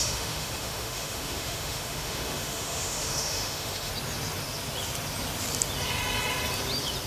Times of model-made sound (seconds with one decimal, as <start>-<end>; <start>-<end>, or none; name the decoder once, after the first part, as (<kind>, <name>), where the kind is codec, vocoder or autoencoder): 0.0-3.9 (autoencoder, DAC-VAE)